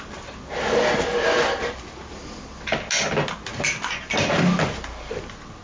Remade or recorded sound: recorded